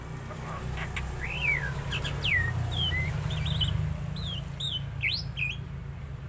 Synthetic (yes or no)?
no